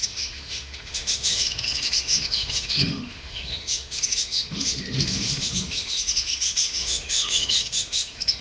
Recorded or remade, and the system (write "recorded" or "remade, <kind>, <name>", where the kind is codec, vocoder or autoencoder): remade, autoencoder, DAC-VAE